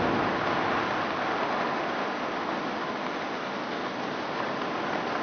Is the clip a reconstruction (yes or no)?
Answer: no